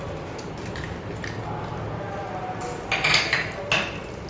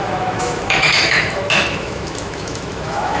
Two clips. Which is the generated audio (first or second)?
second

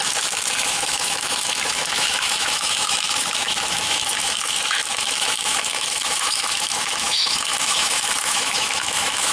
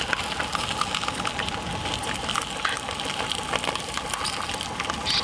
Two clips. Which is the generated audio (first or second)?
first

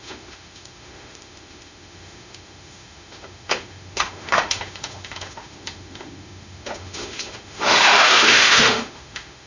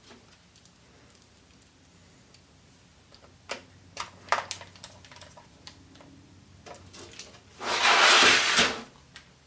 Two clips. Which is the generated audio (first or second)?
first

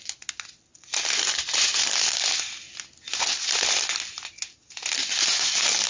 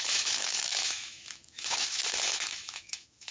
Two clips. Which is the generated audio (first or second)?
second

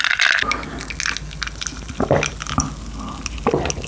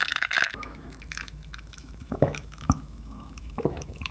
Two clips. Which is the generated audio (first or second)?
second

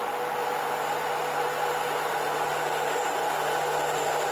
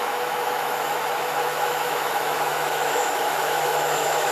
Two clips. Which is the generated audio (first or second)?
second